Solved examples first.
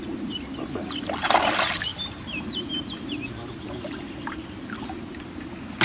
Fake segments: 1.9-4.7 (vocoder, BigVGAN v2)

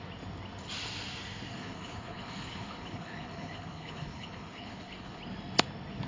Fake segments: 1.5-5.2 (codec, HILCodec)

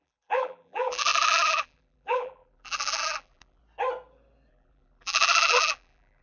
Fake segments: 0.0-3.6 (vocoder, BigVGAN v2); 4.5-6.2

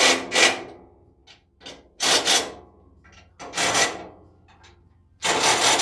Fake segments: none

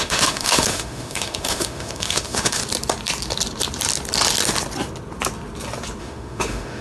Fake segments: 0.0-2.6 (autoencoder, DAC-VAE); 6.0-6.8